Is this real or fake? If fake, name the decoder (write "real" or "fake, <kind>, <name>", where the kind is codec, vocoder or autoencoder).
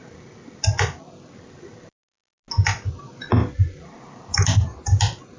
real